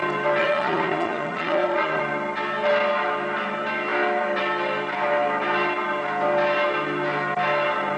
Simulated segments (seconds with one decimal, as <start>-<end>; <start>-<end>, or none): 0.4-2.0